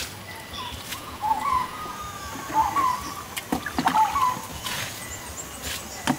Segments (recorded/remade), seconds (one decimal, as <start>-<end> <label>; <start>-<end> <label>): 0.0-0.9 recorded; 0.9-2.0 remade; 2.0-4.5 recorded; 4.5-5.2 remade; 5.2-6.2 recorded